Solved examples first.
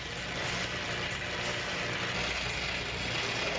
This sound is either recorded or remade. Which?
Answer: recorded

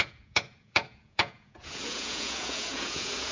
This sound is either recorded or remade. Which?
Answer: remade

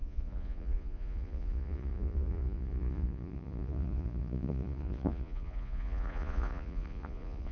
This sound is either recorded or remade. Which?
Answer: remade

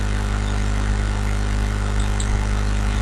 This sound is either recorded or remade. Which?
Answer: recorded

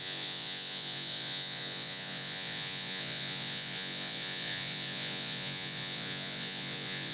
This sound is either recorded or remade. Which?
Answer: remade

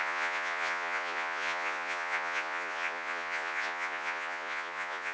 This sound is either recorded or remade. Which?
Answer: remade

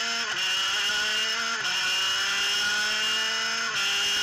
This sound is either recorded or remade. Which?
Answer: recorded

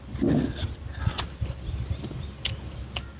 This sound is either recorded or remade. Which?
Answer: recorded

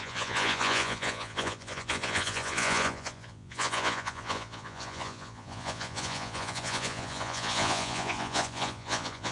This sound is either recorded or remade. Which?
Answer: remade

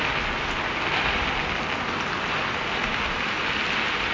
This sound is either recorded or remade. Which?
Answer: recorded